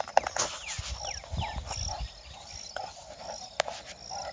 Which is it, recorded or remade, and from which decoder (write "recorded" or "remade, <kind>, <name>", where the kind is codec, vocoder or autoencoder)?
recorded